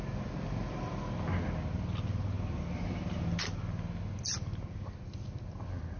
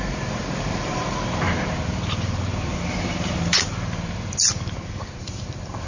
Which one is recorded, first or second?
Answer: first